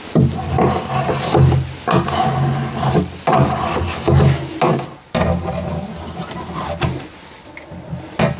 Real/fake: real